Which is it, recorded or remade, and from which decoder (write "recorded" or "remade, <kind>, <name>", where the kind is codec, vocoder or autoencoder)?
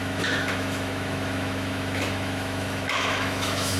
remade, autoencoder, DAC-VAE